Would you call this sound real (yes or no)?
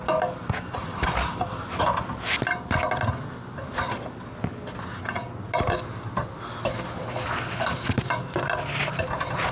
yes